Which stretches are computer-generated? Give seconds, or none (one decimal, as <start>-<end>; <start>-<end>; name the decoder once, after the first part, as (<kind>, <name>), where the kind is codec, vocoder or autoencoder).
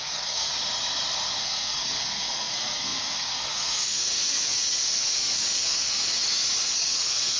0.0-0.5 (codec, SNAC); 1.4-6.2; 6.7-7.4